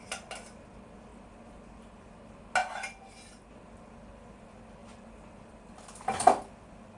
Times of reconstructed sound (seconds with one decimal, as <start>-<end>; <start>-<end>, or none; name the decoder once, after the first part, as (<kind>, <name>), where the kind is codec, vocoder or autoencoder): 1.1-2.0 (vocoder, BigVGAN v2); 4.8-5.7